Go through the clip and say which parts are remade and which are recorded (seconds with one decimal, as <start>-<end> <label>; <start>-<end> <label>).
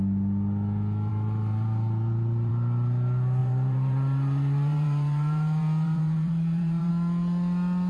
0.0-1.1 recorded; 1.1-2.5 remade; 2.5-3.4 recorded; 3.4-6.9 remade; 6.9-7.9 recorded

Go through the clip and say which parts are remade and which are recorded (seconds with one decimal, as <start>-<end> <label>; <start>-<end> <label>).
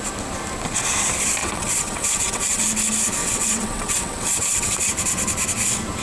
0.0-1.4 recorded; 1.4-2.6 remade; 2.6-3.2 recorded; 3.2-4.9 remade; 4.9-6.0 recorded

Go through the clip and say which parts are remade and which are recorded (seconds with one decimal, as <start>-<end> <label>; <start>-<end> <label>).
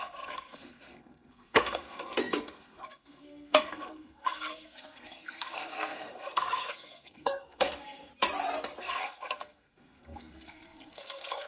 0.0-8.1 remade; 8.1-8.8 recorded; 8.8-11.5 remade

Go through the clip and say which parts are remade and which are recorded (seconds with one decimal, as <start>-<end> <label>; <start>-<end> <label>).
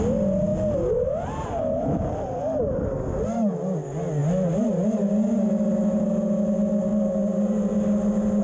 0.0-6.9 recorded; 6.9-7.7 remade; 7.7-8.4 recorded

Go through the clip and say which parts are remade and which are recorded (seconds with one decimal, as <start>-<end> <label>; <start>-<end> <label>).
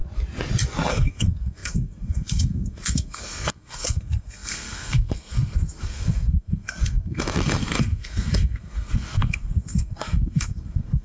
0.0-0.9 recorded; 0.9-11.0 remade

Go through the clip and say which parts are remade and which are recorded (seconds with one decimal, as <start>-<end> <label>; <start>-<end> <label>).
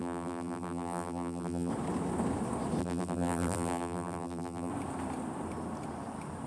0.0-1.7 remade; 1.7-2.8 recorded; 2.8-4.7 remade; 4.7-6.5 recorded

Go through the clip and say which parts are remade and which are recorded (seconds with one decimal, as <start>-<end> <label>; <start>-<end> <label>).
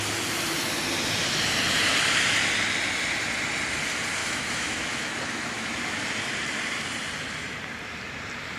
0.0-4.2 recorded; 4.2-5.7 remade; 5.7-8.6 recorded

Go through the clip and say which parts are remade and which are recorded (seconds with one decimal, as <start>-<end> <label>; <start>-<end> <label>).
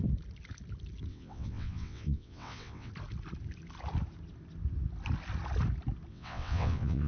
0.0-1.1 recorded; 1.1-2.9 remade; 2.9-6.1 recorded; 6.1-7.1 remade